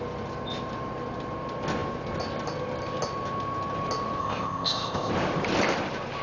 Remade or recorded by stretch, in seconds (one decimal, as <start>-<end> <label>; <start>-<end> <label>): 0.0-4.2 recorded; 4.2-5.1 remade; 5.1-6.2 recorded

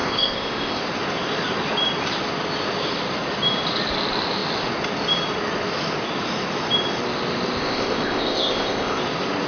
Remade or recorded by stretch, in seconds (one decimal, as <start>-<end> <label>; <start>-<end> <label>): 0.0-0.8 remade; 0.8-7.6 recorded; 7.6-9.0 remade; 9.0-9.5 recorded

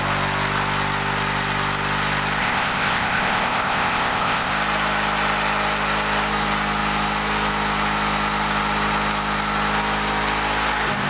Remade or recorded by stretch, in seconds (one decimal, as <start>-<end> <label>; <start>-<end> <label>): 0.0-2.4 recorded; 2.4-4.5 remade; 4.5-11.1 recorded

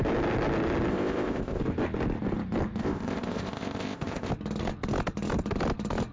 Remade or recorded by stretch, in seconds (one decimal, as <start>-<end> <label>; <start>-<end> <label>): 0.0-0.9 recorded; 0.9-1.6 remade; 1.6-2.8 recorded; 2.8-4.3 remade; 4.3-6.1 recorded

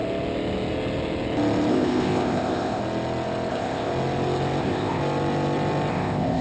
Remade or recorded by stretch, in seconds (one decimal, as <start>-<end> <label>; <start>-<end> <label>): 0.0-1.7 recorded; 1.7-2.8 remade; 2.8-3.5 recorded; 3.5-3.9 remade; 3.9-4.6 recorded; 4.6-5.0 remade; 5.0-5.9 recorded; 5.9-6.4 remade

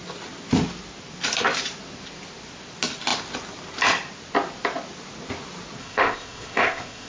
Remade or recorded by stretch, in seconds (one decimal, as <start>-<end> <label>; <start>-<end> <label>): 0.0-5.8 recorded; 5.8-7.1 remade

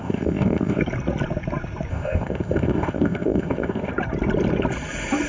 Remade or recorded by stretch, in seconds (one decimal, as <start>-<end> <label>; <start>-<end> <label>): 0.0-0.8 remade; 0.8-1.9 recorded; 1.9-3.9 remade; 3.9-5.3 recorded